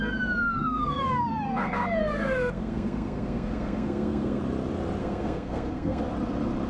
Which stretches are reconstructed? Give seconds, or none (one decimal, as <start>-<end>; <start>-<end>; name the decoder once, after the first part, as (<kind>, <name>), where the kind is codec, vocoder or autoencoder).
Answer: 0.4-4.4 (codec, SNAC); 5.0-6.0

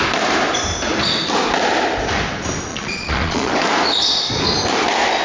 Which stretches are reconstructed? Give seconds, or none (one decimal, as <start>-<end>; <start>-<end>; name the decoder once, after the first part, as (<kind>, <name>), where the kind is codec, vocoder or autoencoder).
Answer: 2.7-3.5 (vocoder, Vocos)

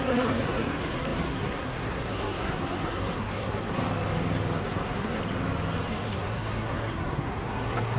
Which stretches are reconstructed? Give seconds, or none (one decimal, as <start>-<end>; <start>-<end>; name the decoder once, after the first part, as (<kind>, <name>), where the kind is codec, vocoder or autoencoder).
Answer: 0.0-3.8 (codec, SNAC); 4.6-5.2; 5.9-8.0

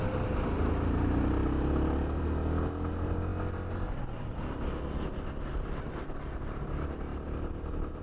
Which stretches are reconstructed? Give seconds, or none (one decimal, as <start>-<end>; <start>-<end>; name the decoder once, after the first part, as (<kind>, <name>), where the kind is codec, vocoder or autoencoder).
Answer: none

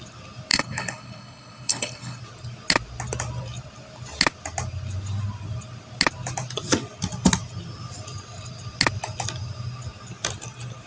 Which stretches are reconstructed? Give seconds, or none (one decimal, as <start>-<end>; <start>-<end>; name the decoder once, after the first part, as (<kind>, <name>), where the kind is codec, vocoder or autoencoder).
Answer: 0.5-2.2 (codec, HILCodec)

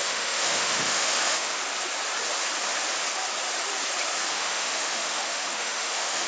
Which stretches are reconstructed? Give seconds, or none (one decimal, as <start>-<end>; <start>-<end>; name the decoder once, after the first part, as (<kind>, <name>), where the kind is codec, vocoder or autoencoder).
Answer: 0.0-1.6 (autoencoder, DAC-VAE); 4.3-6.3